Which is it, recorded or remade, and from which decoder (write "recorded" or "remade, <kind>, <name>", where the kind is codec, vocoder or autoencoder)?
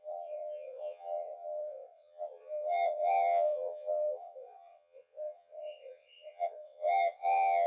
remade, vocoder, WaveNeXt